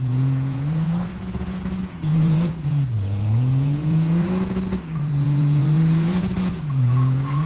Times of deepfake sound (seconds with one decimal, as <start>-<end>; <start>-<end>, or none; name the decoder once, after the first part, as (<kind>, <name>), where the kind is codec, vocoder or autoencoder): 0.0-7.5 (vocoder, Vocos)